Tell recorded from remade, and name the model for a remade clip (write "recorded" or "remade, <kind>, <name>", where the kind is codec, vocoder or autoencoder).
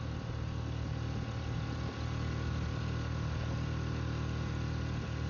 recorded